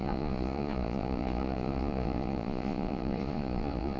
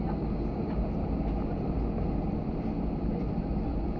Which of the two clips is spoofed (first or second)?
first